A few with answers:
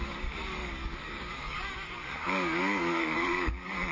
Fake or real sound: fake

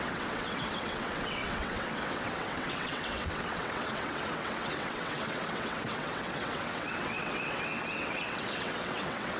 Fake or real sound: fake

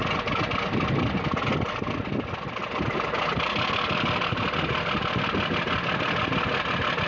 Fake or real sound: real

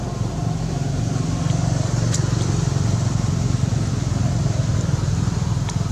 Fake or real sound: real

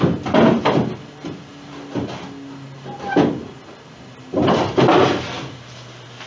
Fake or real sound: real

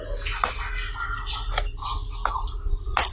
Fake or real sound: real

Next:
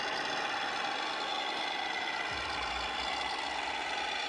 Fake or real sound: real